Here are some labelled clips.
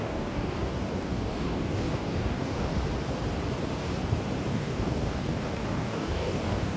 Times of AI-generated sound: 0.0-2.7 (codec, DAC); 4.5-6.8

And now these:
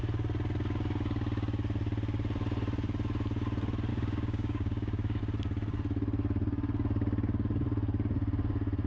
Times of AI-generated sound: 3.9-5.2 (codec, DAC)